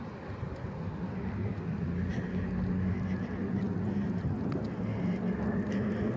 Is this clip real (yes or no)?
yes